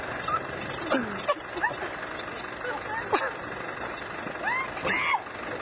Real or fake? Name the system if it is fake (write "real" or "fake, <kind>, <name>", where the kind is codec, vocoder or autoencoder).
real